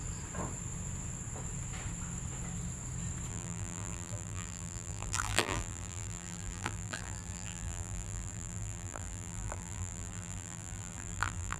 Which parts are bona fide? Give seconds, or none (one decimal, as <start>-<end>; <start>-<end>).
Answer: 0.0-3.3